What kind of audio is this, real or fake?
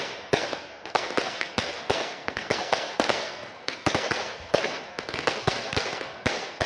fake